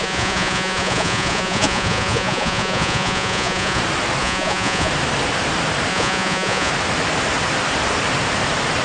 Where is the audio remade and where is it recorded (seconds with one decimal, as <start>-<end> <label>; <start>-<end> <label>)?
0.0-3.8 remade; 3.8-4.2 recorded; 4.2-4.9 remade; 4.9-5.9 recorded; 5.9-6.7 remade; 6.7-8.8 recorded